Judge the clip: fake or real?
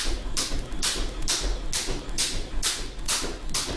real